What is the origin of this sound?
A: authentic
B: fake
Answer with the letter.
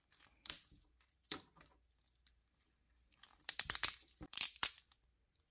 B